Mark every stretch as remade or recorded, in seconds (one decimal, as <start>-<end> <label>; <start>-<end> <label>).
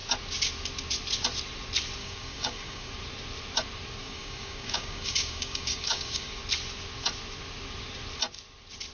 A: 0.0-2.0 recorded; 2.0-2.9 remade; 2.9-4.0 recorded; 4.0-6.4 remade; 6.4-8.9 recorded